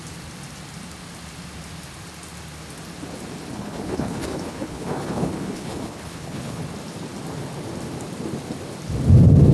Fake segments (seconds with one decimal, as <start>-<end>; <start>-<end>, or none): 3.5-6.6